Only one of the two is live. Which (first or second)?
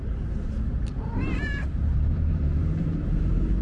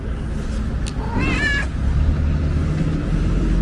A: second